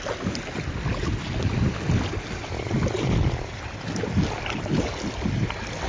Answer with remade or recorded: recorded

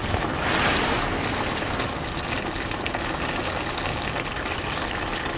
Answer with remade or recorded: recorded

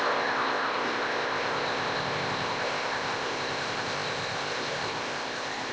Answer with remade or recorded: remade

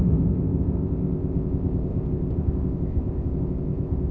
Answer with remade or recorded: remade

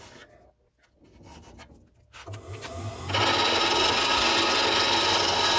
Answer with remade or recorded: recorded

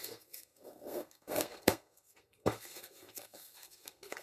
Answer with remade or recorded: remade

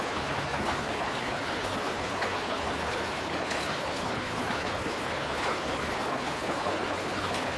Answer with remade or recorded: remade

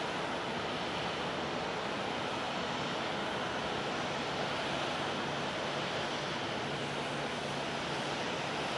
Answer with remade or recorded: recorded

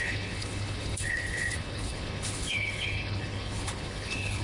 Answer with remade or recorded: remade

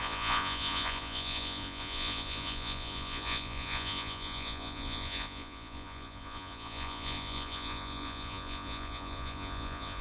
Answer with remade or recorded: remade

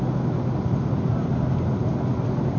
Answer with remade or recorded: recorded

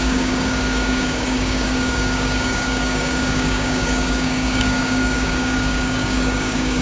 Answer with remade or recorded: remade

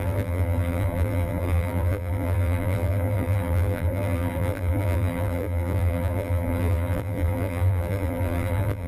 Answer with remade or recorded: remade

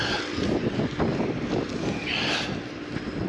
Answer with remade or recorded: recorded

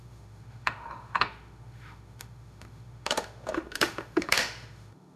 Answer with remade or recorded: remade